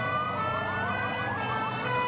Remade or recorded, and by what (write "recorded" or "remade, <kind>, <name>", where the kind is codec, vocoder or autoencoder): recorded